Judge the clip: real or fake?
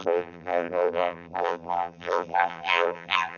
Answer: fake